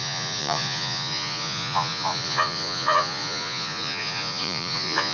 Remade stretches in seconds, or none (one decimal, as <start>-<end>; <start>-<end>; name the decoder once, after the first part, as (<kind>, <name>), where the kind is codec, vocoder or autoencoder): 0.0-5.1 (vocoder, Vocos)